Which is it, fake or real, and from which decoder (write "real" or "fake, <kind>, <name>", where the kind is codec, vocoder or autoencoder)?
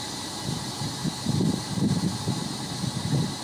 real